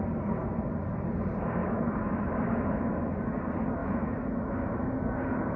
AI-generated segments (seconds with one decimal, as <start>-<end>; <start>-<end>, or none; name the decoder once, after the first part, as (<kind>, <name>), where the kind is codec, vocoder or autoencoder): 1.6-3.1 (autoencoder, DAC-VAE); 3.8-5.0